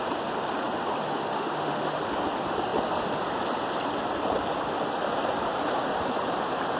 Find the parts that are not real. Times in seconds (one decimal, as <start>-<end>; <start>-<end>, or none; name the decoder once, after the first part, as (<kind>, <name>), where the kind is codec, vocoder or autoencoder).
1.1-2.0 (autoencoder, DAC-VAE)